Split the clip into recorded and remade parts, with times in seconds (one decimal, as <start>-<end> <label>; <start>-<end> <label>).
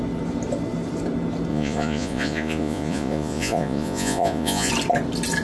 0.0-1.5 recorded; 1.5-4.7 remade; 4.7-5.4 recorded